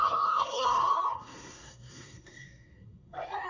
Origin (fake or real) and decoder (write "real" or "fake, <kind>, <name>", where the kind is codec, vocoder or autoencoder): fake, codec, SNAC